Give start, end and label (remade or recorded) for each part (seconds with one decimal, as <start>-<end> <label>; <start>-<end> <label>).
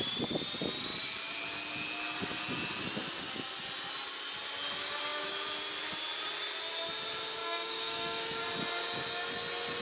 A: 0.0-7.4 recorded; 7.4-8.4 remade; 8.4-9.8 recorded